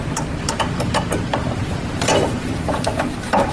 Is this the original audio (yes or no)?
no